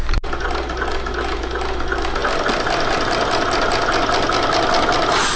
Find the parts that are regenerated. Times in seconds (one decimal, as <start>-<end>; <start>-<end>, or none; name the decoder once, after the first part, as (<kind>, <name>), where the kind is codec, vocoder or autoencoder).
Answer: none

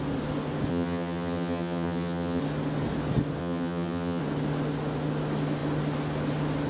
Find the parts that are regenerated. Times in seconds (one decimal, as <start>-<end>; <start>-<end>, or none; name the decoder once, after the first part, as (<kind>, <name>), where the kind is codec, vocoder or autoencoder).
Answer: 0.7-2.4 (vocoder, HiFi-GAN); 3.4-4.2

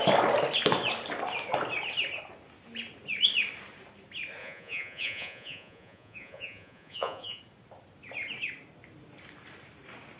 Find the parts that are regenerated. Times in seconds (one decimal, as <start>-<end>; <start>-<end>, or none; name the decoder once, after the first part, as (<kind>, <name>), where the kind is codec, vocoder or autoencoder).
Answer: 4.4-7.4 (vocoder, Vocos)

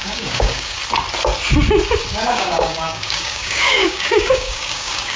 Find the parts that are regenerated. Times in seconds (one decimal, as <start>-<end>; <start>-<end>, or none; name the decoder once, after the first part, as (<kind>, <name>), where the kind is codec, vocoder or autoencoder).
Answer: 0.0-0.8 (codec, DAC); 2.1-5.2

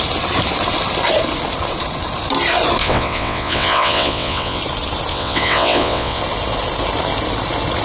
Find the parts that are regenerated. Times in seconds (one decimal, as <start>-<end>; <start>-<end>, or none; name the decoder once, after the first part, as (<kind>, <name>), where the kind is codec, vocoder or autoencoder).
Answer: 2.8-4.6 (vocoder, WaveNeXt); 5.1-6.2

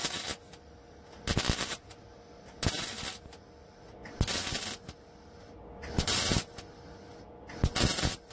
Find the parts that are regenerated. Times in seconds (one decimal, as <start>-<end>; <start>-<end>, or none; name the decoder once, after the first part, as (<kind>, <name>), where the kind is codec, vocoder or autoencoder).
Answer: none

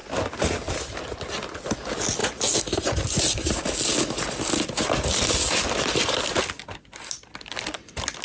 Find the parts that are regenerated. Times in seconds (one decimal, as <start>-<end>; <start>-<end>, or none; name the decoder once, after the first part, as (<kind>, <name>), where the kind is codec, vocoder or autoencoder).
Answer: none

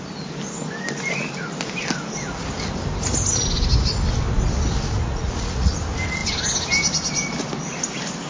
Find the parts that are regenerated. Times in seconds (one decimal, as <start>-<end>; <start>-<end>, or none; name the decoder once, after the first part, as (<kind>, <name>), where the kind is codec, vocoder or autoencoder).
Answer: 5.0-5.7 (vocoder, Vocos)